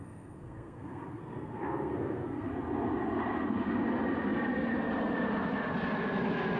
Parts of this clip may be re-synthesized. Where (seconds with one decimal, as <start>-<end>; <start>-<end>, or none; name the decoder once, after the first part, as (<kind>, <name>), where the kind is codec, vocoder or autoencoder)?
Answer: 0.0-2.5 (codec, SNAC)